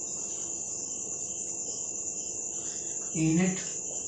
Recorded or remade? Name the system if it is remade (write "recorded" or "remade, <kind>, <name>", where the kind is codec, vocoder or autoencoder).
recorded